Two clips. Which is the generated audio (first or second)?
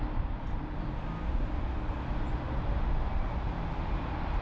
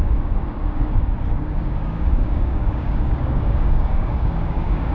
second